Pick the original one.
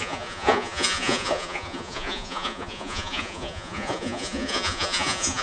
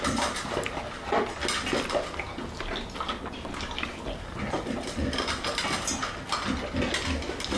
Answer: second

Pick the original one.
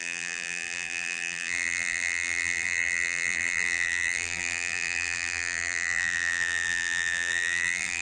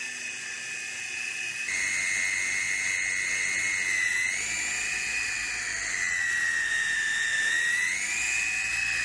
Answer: second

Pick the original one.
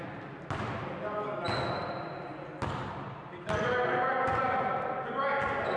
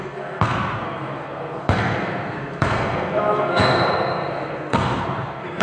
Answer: first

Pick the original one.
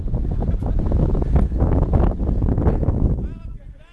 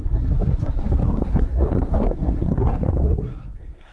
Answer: first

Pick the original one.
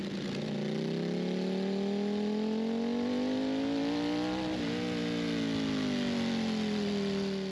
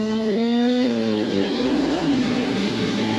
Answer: first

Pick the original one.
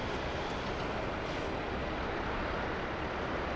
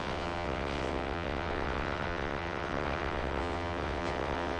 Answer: first